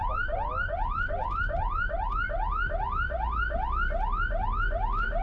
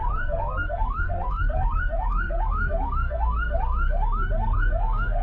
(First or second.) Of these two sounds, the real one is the first